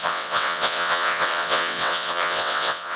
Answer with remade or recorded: remade